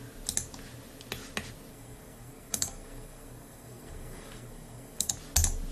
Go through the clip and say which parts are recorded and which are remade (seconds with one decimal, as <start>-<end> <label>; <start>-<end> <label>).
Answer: 0.0-1.7 recorded; 1.7-5.1 remade; 5.1-5.7 recorded

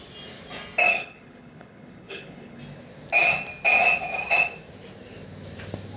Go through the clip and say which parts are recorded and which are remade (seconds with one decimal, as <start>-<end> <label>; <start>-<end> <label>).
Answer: 0.0-0.9 recorded; 0.9-2.6 remade; 2.6-6.0 recorded

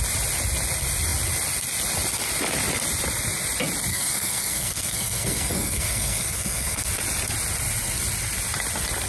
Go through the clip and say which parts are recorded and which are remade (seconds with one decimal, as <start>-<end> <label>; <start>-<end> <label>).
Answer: 0.0-3.9 recorded; 3.9-6.9 remade; 6.9-9.1 recorded

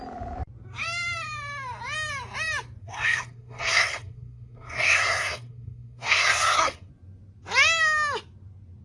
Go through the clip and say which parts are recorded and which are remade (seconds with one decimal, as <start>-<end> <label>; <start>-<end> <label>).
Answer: 0.0-2.8 recorded; 2.8-6.9 remade; 6.9-8.8 recorded

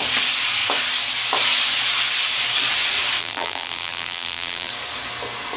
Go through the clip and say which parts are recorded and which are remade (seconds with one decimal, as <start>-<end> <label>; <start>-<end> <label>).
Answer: 0.0-3.2 recorded; 3.2-4.7 remade; 4.7-5.6 recorded

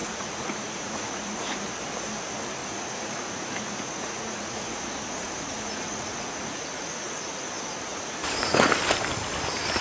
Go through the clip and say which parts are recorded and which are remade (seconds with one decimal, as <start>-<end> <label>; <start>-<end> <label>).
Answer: 0.0-1.6 remade; 1.6-2.6 recorded; 2.6-7.5 remade; 7.5-7.9 recorded; 7.9-8.7 remade; 8.7-9.8 recorded

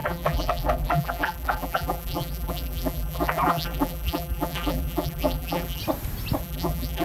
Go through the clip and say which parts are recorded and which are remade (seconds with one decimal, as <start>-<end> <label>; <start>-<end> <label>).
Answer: 0.0-5.8 remade; 5.8-6.4 recorded; 6.4-7.0 remade